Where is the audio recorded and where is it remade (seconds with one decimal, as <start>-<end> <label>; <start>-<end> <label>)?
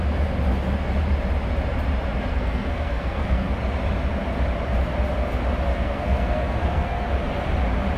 0.0-2.3 recorded; 2.3-3.5 remade; 3.5-5.7 recorded; 5.7-7.1 remade; 7.1-8.0 recorded